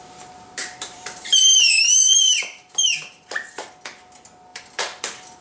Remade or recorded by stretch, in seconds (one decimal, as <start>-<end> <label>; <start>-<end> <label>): 0.0-0.6 recorded; 0.6-3.8 remade; 3.8-4.5 recorded; 4.5-5.4 remade